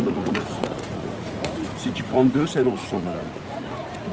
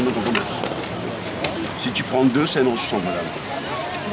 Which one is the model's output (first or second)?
first